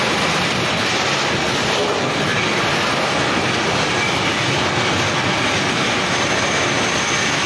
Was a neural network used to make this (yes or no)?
no